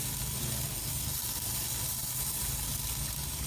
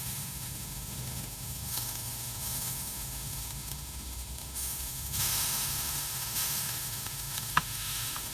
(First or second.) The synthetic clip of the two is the second